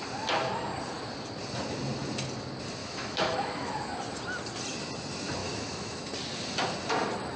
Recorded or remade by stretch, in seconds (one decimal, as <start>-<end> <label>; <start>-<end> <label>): 0.0-2.8 recorded; 2.8-3.8 remade; 3.8-5.4 recorded; 5.4-6.0 remade; 6.0-7.4 recorded